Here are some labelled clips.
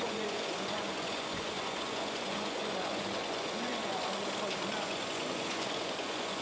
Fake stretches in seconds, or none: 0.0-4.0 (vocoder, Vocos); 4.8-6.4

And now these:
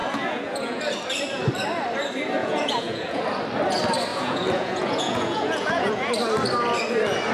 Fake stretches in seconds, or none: 0.0-0.8 (vocoder, Vocos); 2.4-3.2; 4.1-6.1

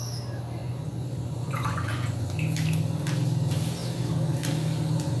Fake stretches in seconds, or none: 0.6-2.2 (vocoder, Vocos)

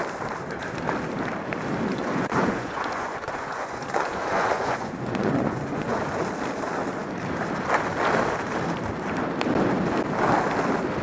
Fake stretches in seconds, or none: 1.9-6.2 (vocoder, Vocos)